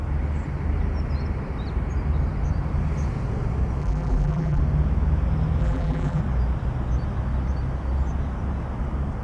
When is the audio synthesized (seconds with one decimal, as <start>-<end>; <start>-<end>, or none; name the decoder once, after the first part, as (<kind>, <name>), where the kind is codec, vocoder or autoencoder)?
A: 3.8-4.6 (vocoder, BigVGAN v2); 5.6-6.2